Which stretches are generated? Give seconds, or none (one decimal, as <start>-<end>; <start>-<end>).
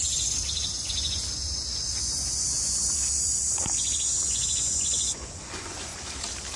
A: 0.0-5.9